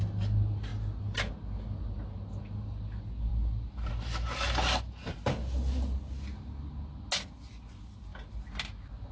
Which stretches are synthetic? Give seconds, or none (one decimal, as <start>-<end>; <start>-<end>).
none